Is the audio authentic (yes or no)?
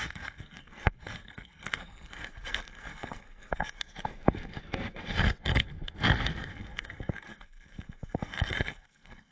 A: no